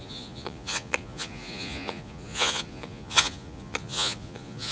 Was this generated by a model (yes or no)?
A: yes